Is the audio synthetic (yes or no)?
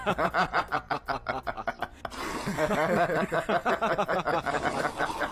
no